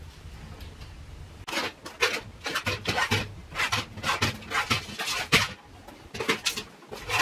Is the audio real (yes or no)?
yes